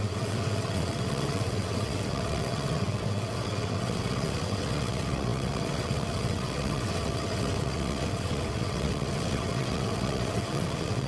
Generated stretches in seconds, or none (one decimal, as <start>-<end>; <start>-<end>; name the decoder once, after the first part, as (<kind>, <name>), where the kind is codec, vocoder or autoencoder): 0.0-11.1 (vocoder, WaveNeXt)